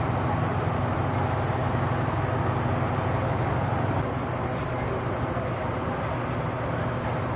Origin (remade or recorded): recorded